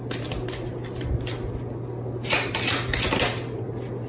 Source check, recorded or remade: recorded